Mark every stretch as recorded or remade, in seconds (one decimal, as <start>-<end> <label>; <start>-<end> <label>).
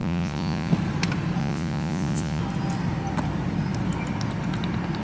0.0-0.7 remade; 0.7-1.4 recorded; 1.4-2.4 remade; 2.4-5.0 recorded